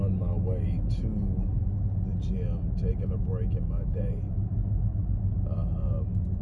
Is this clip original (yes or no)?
yes